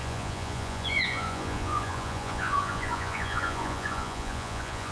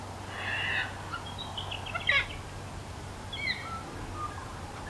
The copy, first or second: first